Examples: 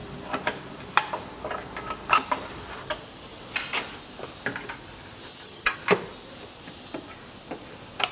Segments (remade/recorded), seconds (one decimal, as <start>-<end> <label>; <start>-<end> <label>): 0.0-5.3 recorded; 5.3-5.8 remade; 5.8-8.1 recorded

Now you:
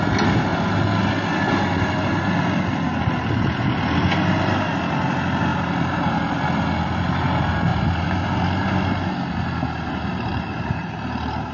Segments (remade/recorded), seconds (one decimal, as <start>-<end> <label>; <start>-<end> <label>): 0.0-10.3 recorded; 10.3-11.5 remade

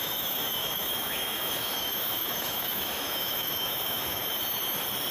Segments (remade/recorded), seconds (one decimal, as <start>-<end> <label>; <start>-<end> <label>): 0.0-4.2 remade; 4.2-5.1 recorded